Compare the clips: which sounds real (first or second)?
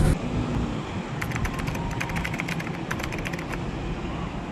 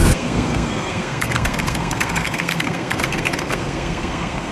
first